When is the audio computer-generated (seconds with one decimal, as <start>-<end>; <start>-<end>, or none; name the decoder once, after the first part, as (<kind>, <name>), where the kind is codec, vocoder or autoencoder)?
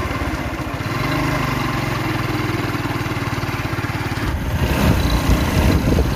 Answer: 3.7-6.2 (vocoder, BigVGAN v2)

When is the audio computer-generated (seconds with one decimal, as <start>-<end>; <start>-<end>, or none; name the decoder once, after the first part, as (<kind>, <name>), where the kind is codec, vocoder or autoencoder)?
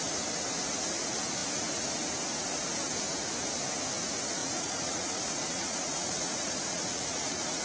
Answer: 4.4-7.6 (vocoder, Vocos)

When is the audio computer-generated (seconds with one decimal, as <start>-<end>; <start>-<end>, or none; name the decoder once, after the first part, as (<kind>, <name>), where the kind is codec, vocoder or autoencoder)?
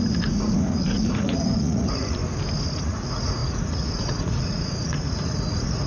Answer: 0.0-2.2 (vocoder, Vocos); 2.8-5.9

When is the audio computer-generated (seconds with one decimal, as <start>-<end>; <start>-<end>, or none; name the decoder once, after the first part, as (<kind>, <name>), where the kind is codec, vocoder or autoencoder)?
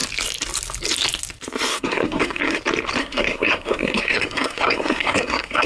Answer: 1.7-2.6 (codec, SNAC); 3.0-5.7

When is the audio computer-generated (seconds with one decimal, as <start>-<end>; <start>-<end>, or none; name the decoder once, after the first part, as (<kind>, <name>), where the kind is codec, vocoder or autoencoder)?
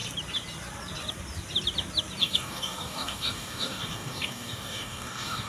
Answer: 2.2-5.5 (codec, DAC)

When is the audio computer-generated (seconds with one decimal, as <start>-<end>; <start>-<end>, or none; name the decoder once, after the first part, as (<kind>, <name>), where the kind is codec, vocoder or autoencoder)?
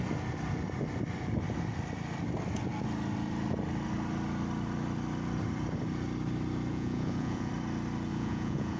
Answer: 6.7-7.5 (vocoder, Vocos); 8.1-8.8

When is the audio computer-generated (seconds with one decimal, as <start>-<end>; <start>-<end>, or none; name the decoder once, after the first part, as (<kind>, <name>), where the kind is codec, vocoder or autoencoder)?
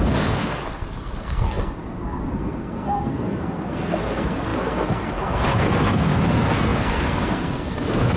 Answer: 0.0-8.2 (codec, SNAC)